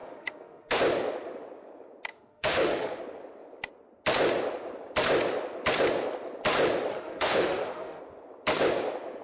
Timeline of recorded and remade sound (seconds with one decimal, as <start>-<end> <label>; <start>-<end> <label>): 0.0-0.8 remade; 0.8-2.1 recorded; 2.1-3.0 remade; 3.0-6.9 recorded; 6.9-8.0 remade; 8.0-9.2 recorded